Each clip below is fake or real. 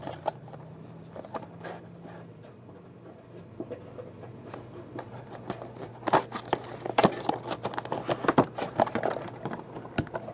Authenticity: real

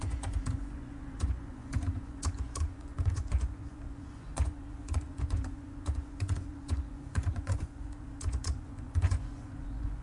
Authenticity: fake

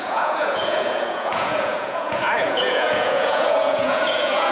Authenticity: fake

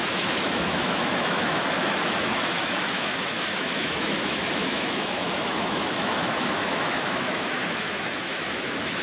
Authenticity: fake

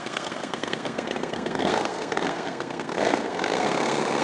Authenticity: fake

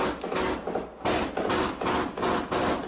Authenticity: real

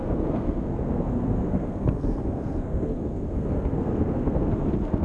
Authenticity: fake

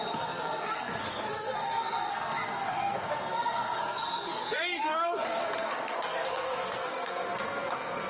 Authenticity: fake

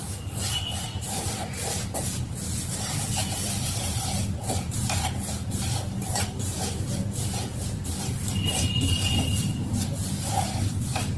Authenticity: fake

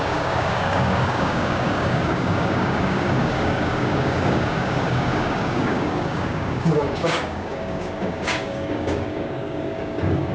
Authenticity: fake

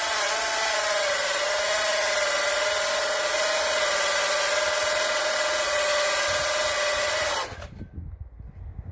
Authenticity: real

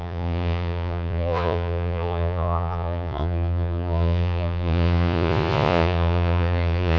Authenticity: fake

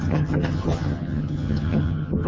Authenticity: fake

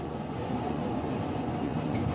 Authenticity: fake